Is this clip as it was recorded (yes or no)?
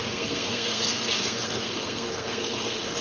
no